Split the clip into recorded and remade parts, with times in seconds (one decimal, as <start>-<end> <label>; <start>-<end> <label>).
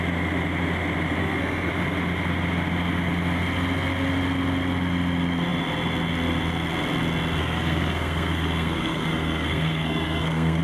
0.0-1.2 recorded; 1.2-1.7 remade; 1.7-7.4 recorded; 7.4-10.6 remade